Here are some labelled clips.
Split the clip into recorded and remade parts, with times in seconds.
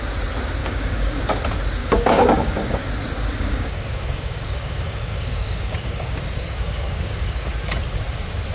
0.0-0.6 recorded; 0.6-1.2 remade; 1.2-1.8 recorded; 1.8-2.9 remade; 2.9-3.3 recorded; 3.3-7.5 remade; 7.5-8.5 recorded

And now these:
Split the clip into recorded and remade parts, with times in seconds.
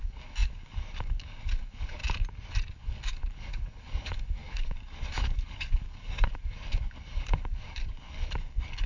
0.0-2.0 remade; 2.0-2.7 recorded; 2.7-8.9 remade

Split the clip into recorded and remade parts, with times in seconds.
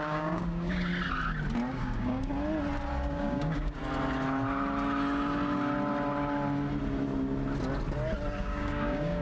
0.0-0.9 remade; 0.9-1.7 recorded; 1.7-2.3 remade; 2.3-3.1 recorded; 3.1-3.8 remade; 3.8-8.4 recorded; 8.4-9.2 remade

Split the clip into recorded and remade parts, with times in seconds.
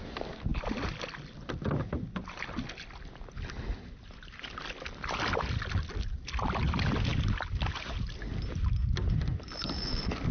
0.0-10.3 recorded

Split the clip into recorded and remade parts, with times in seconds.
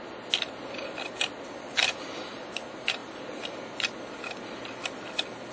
0.0-5.5 recorded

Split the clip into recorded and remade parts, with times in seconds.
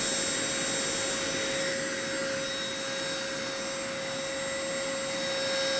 0.0-5.8 recorded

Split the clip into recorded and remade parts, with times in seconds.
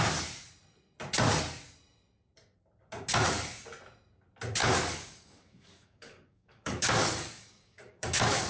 0.0-4.6 recorded; 4.6-8.5 remade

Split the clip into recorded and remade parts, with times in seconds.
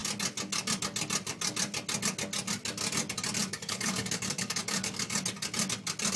0.0-3.4 recorded; 3.4-5.1 remade; 5.1-6.2 recorded